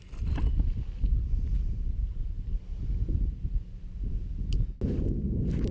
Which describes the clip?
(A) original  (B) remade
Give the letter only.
A